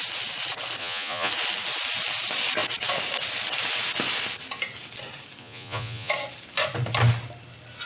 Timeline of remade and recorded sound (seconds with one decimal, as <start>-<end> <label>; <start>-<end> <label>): 0.0-0.8 recorded; 0.8-1.3 remade; 1.3-5.4 recorded; 5.4-6.1 remade; 6.1-7.9 recorded